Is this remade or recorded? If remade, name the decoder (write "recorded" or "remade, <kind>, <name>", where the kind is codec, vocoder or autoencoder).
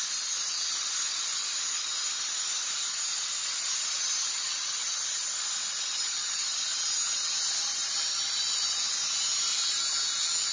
recorded